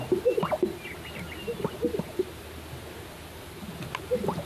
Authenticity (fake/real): real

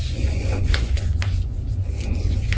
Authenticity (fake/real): fake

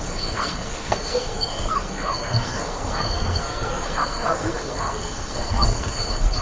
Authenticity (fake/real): fake